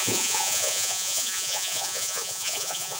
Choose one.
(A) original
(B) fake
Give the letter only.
B